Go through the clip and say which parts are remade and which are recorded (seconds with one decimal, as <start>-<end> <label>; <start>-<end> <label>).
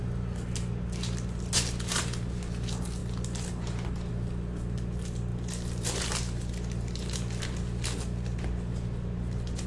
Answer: 0.0-9.7 recorded